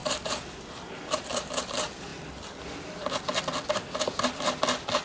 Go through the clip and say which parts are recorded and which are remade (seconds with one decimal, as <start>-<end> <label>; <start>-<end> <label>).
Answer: 0.0-1.7 remade; 1.7-5.0 recorded